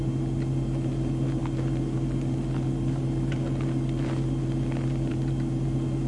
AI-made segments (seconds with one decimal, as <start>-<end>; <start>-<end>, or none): none